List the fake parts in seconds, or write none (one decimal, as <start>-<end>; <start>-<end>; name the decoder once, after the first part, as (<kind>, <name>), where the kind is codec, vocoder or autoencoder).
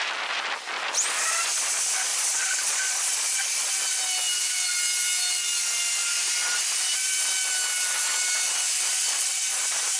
2.1-3.7 (vocoder, Vocos); 9.0-9.6